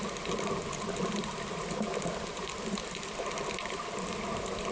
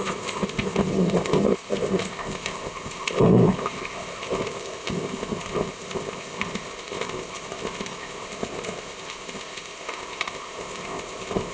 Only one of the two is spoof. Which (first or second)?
second